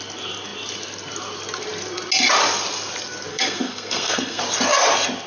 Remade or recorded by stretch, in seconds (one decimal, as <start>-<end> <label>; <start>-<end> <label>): 0.0-3.3 recorded; 3.3-4.4 remade; 4.4-5.3 recorded